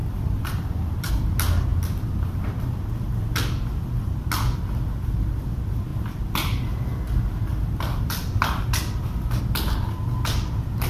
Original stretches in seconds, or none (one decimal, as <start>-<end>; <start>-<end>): 1.1-5.9; 9.4-10.9